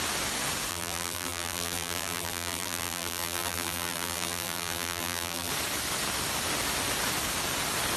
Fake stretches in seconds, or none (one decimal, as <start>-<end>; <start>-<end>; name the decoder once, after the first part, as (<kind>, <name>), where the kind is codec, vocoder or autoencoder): 0.7-5.5 (vocoder, BigVGAN v2)